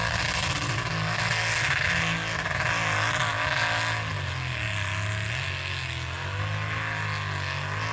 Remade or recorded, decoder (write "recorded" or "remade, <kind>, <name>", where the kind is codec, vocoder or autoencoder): recorded